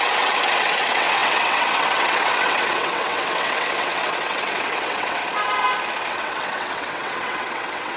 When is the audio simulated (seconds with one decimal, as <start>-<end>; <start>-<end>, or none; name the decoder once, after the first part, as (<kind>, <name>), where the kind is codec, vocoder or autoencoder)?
0.0-5.2 (vocoder, WaveNeXt); 6.1-8.0